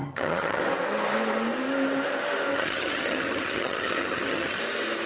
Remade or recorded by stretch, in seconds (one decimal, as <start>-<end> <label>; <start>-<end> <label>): 0.0-0.6 remade; 0.6-2.5 recorded; 2.5-4.6 remade; 4.6-5.1 recorded